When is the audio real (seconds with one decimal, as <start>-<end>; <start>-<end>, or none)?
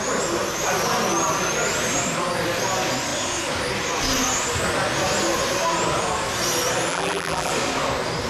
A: 0.0-6.9; 7.5-8.3